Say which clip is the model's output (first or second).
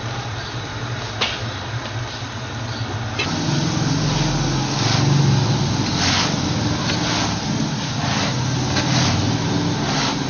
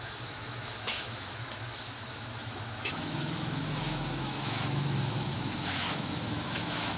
second